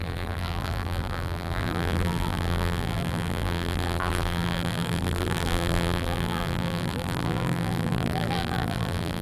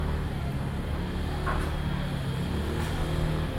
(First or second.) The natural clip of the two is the second